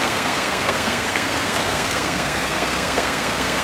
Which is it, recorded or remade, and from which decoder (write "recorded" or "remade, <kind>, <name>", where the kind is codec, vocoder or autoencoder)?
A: remade, codec, SNAC